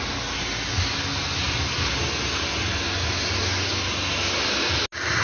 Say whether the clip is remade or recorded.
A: recorded